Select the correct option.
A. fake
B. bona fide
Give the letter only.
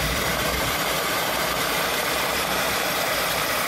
A